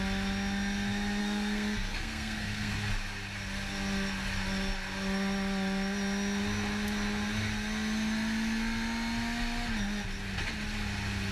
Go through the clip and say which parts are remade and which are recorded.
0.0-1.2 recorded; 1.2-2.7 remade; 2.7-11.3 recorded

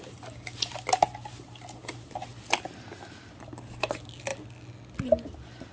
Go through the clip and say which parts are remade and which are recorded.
0.0-5.7 recorded

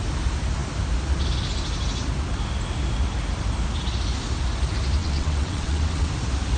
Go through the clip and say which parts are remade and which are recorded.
0.0-5.0 recorded; 5.0-6.1 remade; 6.1-6.6 recorded

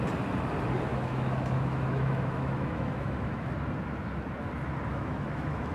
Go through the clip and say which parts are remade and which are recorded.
0.0-0.9 recorded; 0.9-3.5 remade; 3.5-4.9 recorded; 4.9-5.7 remade

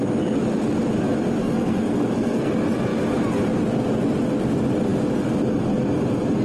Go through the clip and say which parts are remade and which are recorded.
0.0-1.4 recorded; 1.4-2.5 remade; 2.5-6.4 recorded